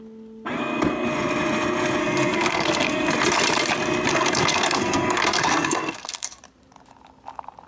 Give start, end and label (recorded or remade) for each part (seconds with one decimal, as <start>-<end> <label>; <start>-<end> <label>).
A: 0.0-2.0 recorded; 2.0-3.1 remade; 3.1-4.1 recorded; 4.1-6.4 remade; 6.4-7.7 recorded

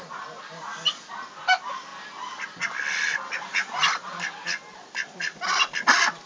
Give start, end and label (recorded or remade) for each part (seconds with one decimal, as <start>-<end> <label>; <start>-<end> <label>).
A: 0.0-4.7 recorded; 4.7-6.3 remade

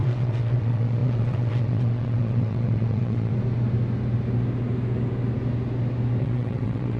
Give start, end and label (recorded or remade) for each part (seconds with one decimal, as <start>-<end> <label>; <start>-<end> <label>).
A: 0.0-3.3 remade; 3.3-6.2 recorded; 6.2-7.0 remade